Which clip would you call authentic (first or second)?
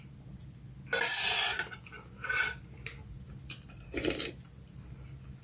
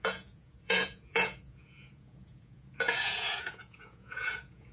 first